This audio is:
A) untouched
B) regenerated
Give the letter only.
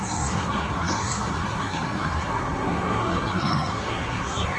B